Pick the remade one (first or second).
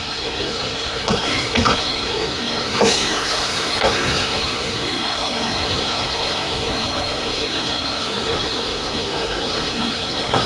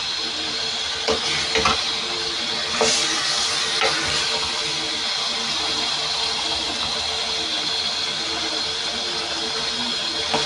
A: first